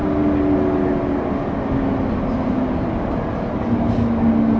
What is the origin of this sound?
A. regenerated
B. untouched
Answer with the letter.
B